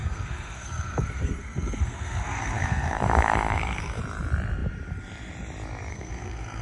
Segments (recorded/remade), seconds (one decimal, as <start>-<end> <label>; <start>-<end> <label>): 0.0-4.0 remade; 4.0-5.9 recorded; 5.9-6.6 remade